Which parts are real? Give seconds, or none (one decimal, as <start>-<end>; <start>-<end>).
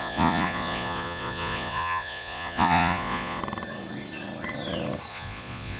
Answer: 3.4-5.1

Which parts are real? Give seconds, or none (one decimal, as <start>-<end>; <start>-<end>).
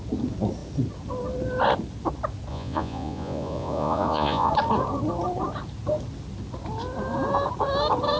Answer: 0.0-2.5; 4.5-8.2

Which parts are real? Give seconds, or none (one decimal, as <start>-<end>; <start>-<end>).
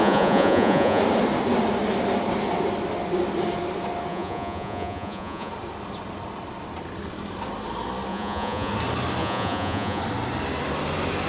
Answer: 1.0-4.1; 5.5-8.1; 8.7-9.2; 10.0-11.3